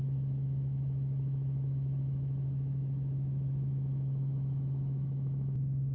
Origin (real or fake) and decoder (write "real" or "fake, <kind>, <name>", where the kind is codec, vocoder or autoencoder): fake, autoencoder, DAC-VAE